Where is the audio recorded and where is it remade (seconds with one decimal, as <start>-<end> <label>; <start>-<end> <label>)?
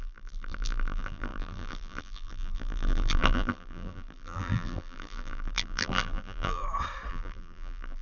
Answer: 0.0-6.6 remade; 6.6-7.1 recorded; 7.1-8.0 remade